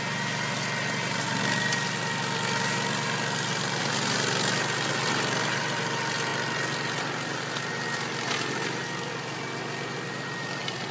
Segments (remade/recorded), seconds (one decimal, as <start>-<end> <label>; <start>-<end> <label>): 0.0-10.9 recorded